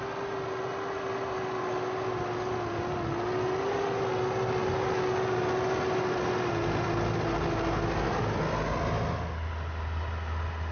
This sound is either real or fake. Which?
real